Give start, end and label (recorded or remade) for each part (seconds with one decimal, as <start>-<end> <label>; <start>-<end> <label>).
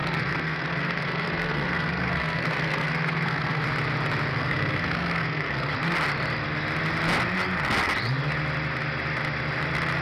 0.0-3.6 remade; 3.6-4.3 recorded; 4.3-5.7 remade; 5.7-10.0 recorded